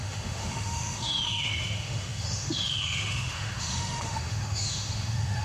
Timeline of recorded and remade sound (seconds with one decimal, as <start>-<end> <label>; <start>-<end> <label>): 0.0-5.4 remade